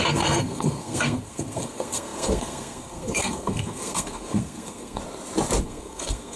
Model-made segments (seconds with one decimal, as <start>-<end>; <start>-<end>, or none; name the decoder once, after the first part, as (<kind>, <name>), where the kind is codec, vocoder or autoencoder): 0.0-5.0 (codec, SNAC); 5.6-6.4